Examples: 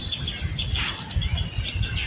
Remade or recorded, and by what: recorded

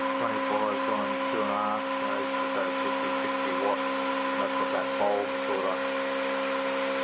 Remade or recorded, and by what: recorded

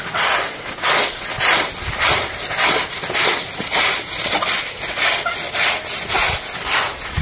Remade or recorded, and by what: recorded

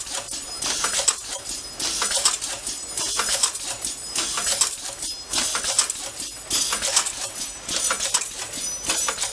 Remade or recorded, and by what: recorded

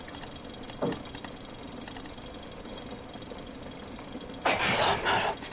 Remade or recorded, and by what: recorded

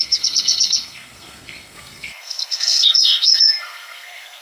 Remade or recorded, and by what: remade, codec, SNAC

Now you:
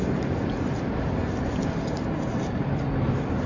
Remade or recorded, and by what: recorded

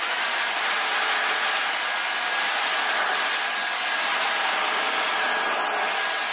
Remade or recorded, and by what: recorded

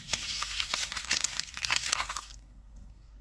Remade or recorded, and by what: remade, codec, SNAC